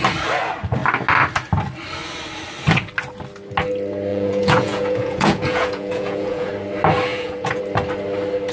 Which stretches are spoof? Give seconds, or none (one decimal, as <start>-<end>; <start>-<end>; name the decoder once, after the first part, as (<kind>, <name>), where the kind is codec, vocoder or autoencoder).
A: 4.1-6.5 (vocoder, Vocos); 7.1-7.6